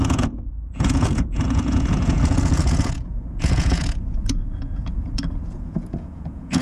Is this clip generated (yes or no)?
yes